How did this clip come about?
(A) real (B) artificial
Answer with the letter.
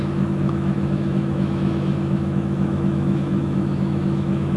B